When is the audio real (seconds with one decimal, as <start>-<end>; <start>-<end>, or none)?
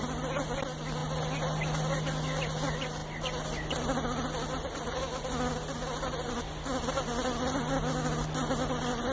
0.0-9.1